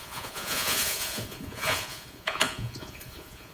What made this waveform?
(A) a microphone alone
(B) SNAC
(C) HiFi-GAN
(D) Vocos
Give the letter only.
D